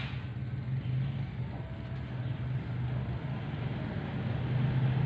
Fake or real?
real